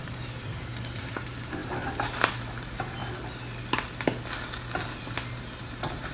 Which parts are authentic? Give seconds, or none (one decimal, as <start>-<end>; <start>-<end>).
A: 3.0-5.6